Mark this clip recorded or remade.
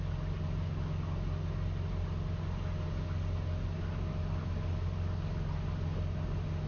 recorded